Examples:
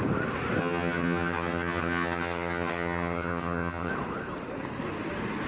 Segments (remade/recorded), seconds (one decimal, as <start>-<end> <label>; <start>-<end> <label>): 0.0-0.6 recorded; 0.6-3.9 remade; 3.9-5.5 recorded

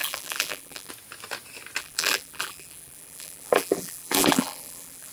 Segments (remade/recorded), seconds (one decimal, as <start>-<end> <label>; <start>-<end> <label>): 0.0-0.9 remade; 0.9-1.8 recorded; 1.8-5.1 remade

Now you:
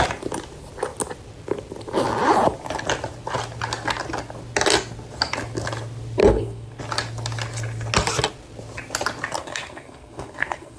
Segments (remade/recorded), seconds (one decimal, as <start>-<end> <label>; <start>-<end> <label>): 0.0-6.2 recorded; 6.2-6.8 remade; 6.8-9.4 recorded; 9.4-10.8 remade

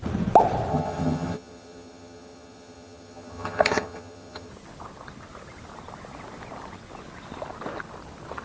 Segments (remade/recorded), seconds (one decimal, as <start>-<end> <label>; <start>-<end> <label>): 0.0-0.7 recorded; 0.7-4.5 remade; 4.5-8.4 recorded

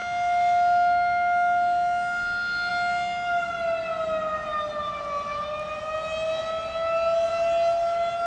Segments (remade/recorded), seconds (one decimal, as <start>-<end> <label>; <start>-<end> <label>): 0.0-8.3 recorded

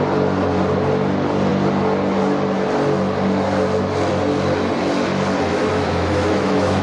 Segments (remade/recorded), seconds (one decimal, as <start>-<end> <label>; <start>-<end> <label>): 0.0-5.5 recorded; 5.5-6.8 remade

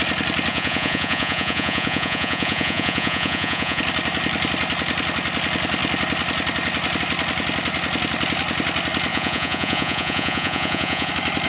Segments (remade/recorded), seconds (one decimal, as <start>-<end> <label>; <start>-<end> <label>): 0.0-0.5 recorded; 0.5-3.8 remade; 3.8-9.1 recorded; 9.1-11.1 remade; 11.1-11.5 recorded

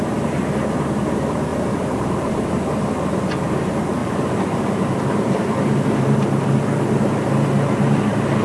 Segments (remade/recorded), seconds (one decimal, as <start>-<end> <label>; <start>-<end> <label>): 0.0-1.5 recorded; 1.5-2.5 remade; 2.5-4.0 recorded; 4.0-5.4 remade; 5.4-8.4 recorded